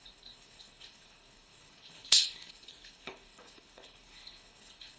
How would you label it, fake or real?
fake